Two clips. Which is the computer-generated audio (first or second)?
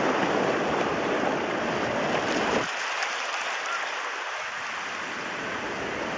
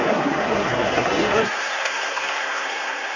second